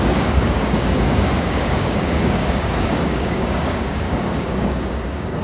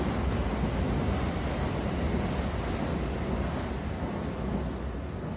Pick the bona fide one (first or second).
second